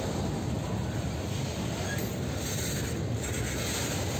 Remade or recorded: recorded